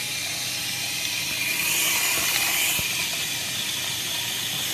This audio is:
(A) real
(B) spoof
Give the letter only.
A